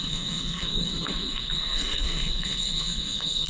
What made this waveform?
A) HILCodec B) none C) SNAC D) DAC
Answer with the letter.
C